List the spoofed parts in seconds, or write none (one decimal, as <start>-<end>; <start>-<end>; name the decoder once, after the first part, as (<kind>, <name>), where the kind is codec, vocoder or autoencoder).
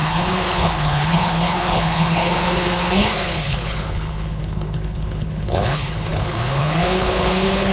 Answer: 0.0-7.7 (codec, HILCodec)